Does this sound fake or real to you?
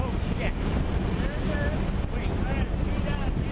real